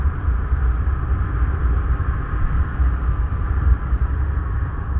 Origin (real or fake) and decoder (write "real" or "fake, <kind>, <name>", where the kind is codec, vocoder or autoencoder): real